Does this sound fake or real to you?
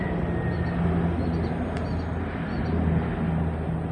real